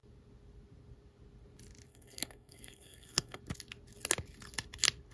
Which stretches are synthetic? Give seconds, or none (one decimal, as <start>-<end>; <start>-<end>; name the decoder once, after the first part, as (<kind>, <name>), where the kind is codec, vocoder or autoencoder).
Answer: 1.9-3.4 (codec, SNAC)